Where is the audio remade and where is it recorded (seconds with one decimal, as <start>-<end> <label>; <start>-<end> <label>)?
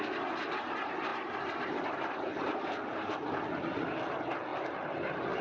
0.0-1.1 recorded; 1.1-3.1 remade; 3.1-5.4 recorded